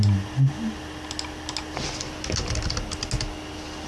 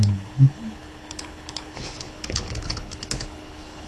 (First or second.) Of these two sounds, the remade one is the second